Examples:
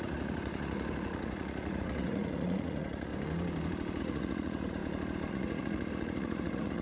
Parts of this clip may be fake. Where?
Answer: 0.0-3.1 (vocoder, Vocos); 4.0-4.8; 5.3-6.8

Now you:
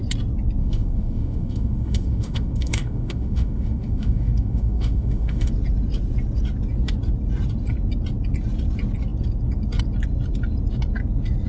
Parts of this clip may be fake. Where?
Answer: 0.6-5.5 (autoencoder, DAC-VAE)

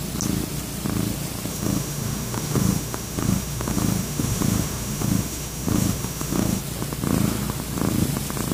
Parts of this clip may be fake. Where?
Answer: 1.5-6.6 (autoencoder, DAC-VAE)

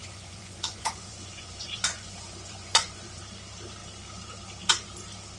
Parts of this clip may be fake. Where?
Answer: 0.0-3.2 (vocoder, Vocos)

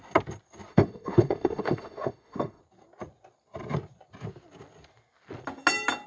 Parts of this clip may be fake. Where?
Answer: 0.7-2.6 (autoencoder, DAC-VAE)

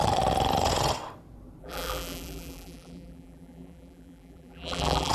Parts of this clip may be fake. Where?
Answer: 1.6-5.1 (vocoder, BigVGAN v2)

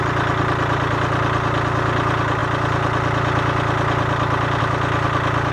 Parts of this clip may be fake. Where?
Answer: none

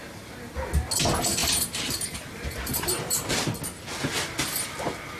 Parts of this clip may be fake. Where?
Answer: 1.4-3.3 (vocoder, BigVGAN v2)